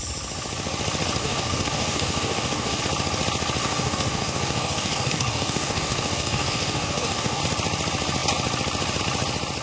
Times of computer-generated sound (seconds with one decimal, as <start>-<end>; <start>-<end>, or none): 1.2-2.8; 3.6-7.4